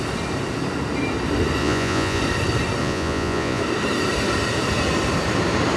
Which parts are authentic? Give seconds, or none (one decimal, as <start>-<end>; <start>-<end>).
0.0-1.6; 2.2-2.8; 3.6-5.8

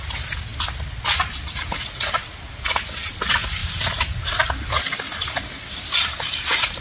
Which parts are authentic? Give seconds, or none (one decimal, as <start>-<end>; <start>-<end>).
0.0-6.8

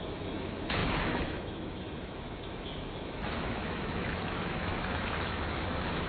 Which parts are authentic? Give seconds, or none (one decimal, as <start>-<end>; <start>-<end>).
none

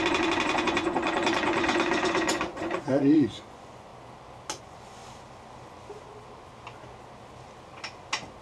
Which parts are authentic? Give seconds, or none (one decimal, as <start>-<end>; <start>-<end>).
3.9-4.6; 5.0-8.4

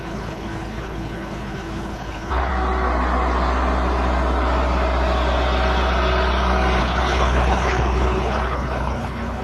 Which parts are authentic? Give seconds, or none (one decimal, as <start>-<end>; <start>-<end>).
2.5-6.8

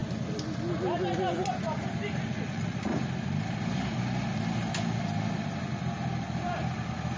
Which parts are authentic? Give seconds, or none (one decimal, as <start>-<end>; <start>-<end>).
0.0-2.4; 2.9-7.2

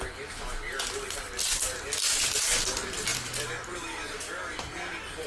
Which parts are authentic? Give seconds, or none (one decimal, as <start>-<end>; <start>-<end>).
0.0-5.3

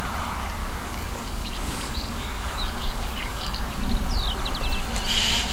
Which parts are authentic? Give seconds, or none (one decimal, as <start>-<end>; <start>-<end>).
0.0-0.6; 3.8-5.5